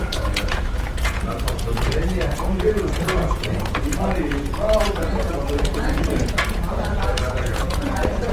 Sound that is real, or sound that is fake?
fake